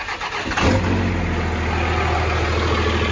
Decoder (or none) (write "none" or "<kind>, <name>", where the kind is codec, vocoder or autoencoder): none